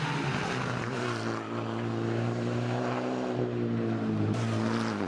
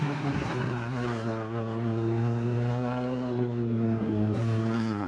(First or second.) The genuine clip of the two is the first